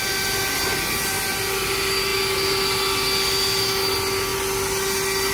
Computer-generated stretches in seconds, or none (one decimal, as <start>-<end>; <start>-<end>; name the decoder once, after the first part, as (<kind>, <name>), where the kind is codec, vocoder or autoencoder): none